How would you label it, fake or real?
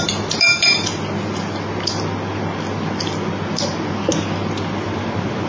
real